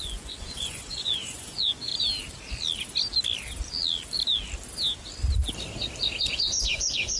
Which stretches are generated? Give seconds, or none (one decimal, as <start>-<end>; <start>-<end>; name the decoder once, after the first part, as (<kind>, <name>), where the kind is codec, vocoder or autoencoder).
0.0-1.9 (vocoder, Vocos); 6.2-7.2